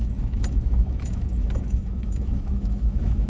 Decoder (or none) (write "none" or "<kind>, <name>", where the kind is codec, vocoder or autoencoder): autoencoder, DAC-VAE